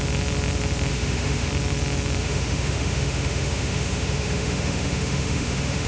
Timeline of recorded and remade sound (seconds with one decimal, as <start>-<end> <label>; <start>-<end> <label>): 0.0-0.9 recorded; 0.9-1.5 remade; 1.5-2.2 recorded; 2.2-5.9 remade